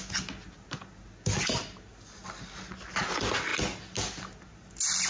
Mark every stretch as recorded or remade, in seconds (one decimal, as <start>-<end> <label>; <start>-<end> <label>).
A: 0.0-5.1 recorded